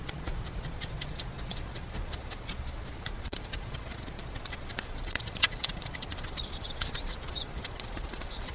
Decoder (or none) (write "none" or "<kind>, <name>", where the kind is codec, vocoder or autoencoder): vocoder, Vocos